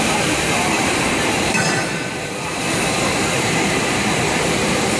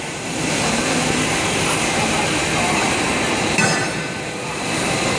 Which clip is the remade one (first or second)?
first